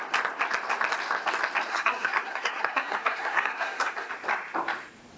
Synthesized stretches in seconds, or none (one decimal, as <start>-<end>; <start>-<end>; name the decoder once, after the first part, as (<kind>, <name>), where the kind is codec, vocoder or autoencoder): 1.7-4.1 (codec, SNAC)